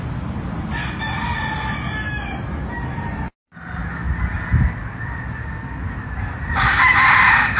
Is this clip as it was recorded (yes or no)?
yes